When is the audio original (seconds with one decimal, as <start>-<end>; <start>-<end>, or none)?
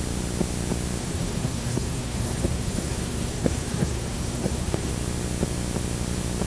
0.0-1.0; 4.9-6.5